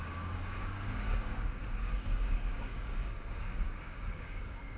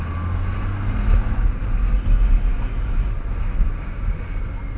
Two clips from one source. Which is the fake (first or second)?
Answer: first